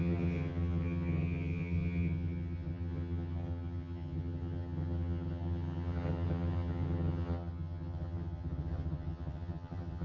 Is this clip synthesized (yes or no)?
yes